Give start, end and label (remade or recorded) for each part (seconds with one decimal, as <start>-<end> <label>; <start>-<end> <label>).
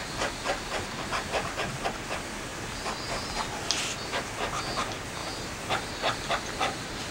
0.0-7.1 recorded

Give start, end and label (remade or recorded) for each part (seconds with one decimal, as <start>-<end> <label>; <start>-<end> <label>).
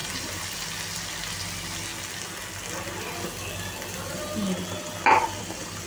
0.0-5.9 recorded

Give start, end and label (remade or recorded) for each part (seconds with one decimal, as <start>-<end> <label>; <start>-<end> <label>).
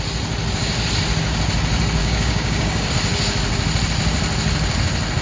0.0-2.0 recorded; 2.0-2.9 remade; 2.9-5.2 recorded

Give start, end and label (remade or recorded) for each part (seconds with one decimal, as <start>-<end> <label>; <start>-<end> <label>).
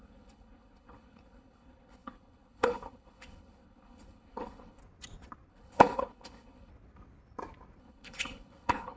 0.0-4.8 remade; 4.8-5.5 recorded; 5.5-6.7 remade; 6.7-7.8 recorded; 7.8-9.0 remade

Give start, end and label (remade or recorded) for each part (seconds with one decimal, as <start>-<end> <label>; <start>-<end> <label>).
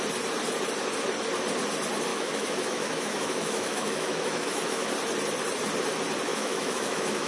0.0-2.1 recorded; 2.1-4.9 remade; 4.9-6.3 recorded; 6.3-7.3 remade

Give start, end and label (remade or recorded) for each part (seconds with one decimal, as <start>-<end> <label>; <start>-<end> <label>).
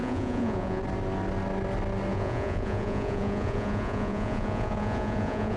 0.0-0.8 remade; 0.8-2.1 recorded; 2.1-5.6 remade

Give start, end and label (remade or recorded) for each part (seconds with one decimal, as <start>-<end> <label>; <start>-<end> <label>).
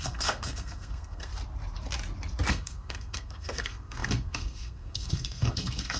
0.0-1.3 remade; 1.3-2.5 recorded; 2.5-6.0 remade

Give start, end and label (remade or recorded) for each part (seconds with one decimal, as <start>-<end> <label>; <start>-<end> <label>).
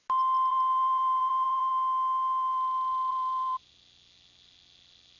0.0-0.5 recorded; 0.5-1.7 remade; 1.7-3.1 recorded; 3.1-3.7 remade; 3.7-5.2 recorded